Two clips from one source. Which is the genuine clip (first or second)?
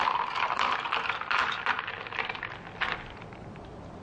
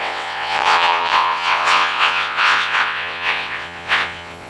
first